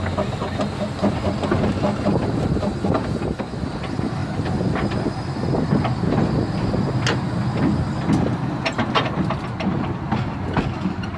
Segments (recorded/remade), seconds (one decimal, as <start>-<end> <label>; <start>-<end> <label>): 0.0-11.2 recorded